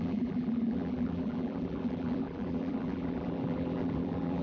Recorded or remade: remade